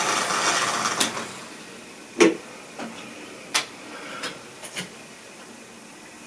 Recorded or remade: recorded